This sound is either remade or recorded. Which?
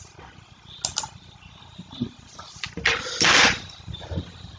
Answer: recorded